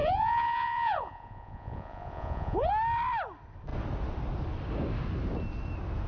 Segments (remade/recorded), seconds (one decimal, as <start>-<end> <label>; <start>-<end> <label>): 0.0-2.7 remade; 2.7-6.1 recorded